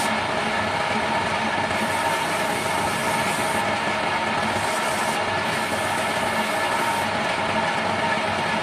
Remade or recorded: recorded